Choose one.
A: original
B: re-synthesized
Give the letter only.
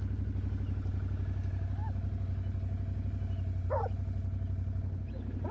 A